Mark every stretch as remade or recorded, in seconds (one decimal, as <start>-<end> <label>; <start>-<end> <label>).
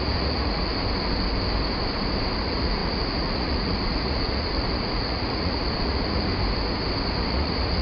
0.0-0.7 remade; 0.7-2.4 recorded; 2.4-6.3 remade; 6.3-7.3 recorded; 7.3-7.8 remade